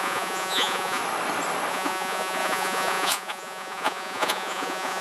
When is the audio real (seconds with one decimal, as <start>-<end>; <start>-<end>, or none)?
1.0-1.7